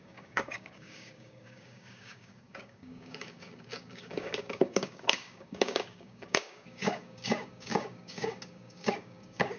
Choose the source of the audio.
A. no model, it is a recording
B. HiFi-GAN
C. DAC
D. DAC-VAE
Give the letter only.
C